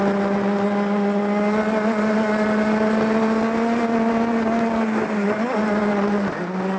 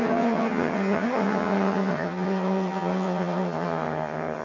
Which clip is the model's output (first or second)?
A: second